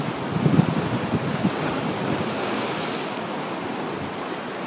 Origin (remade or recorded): recorded